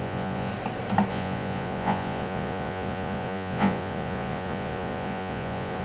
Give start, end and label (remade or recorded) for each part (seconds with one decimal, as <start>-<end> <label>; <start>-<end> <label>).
0.0-0.5 remade; 0.5-1.1 recorded; 1.1-5.8 remade